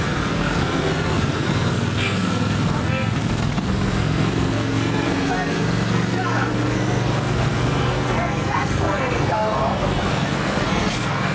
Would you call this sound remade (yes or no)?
yes